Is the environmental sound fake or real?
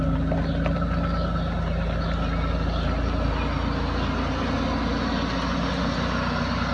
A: real